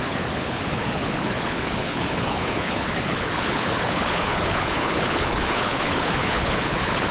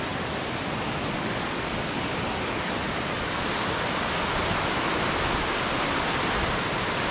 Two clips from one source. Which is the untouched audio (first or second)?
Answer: second